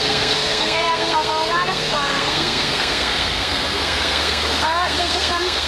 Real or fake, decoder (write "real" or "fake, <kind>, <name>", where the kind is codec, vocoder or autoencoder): fake, codec, SNAC